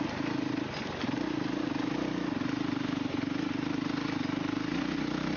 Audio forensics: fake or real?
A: real